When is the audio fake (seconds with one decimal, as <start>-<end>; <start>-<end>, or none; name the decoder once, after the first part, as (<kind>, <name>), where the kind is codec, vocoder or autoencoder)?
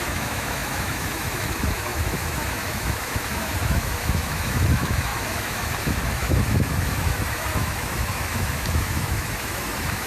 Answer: 0.0-10.1 (autoencoder, DAC-VAE)